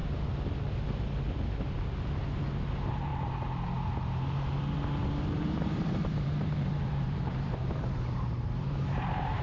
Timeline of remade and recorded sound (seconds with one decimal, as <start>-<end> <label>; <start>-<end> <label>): 0.0-2.7 recorded; 2.7-3.1 remade; 3.1-5.4 recorded; 5.4-9.4 remade